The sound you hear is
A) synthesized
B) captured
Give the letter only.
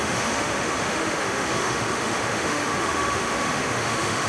A